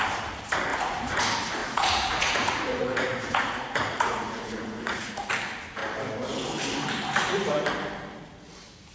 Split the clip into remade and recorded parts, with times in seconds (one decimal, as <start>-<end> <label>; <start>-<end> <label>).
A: 0.0-0.7 recorded; 0.7-1.2 remade; 1.2-1.6 recorded; 1.6-5.3 remade; 5.3-8.9 recorded